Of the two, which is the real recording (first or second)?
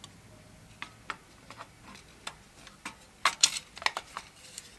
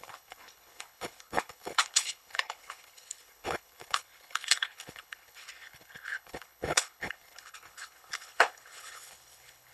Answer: first